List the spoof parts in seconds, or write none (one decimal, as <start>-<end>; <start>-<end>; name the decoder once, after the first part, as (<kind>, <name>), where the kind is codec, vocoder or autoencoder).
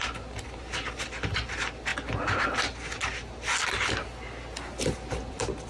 none